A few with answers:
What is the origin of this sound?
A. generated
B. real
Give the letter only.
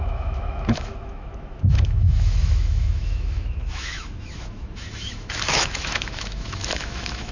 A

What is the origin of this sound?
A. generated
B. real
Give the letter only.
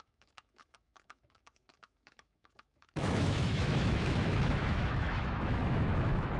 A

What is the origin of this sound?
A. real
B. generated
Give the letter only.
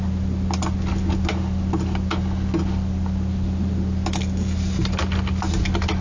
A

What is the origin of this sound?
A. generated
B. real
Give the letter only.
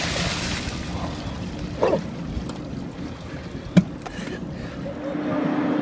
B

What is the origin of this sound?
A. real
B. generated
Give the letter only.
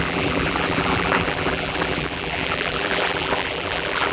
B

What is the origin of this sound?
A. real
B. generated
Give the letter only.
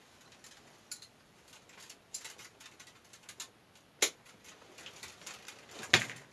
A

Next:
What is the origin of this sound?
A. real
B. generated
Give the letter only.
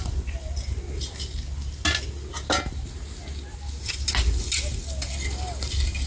A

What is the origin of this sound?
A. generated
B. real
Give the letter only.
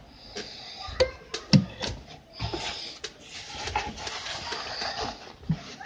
B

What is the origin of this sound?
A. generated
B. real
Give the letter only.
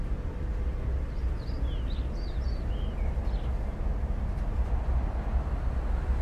B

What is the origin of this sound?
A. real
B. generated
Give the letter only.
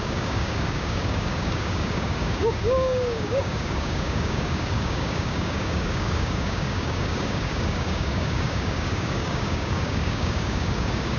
B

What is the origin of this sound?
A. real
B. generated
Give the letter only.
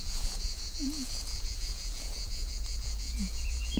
B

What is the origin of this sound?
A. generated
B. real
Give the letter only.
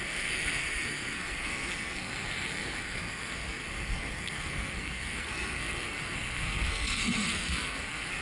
A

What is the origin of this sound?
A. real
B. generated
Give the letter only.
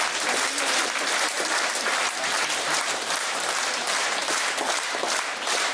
B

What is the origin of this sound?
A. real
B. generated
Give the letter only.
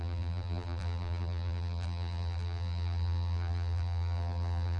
B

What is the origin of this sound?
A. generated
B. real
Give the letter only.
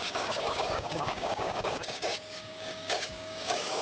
A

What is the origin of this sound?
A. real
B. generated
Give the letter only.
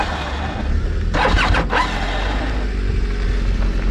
A